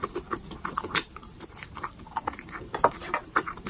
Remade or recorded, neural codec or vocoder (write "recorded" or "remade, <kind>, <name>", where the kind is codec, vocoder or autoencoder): remade, vocoder, BigVGAN v2